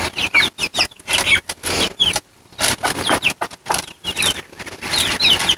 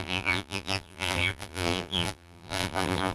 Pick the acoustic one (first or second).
first